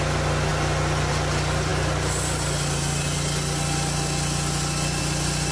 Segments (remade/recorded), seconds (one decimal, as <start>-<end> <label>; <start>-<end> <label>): 0.0-5.5 recorded